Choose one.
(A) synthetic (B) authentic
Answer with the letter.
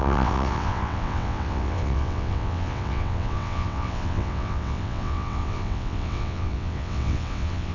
A